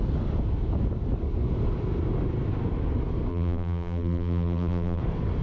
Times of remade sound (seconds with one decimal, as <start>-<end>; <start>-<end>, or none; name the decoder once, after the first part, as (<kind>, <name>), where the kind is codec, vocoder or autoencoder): 3.3-5.0 (vocoder, BigVGAN v2)